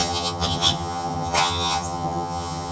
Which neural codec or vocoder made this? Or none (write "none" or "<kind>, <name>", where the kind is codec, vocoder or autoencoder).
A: vocoder, HiFi-GAN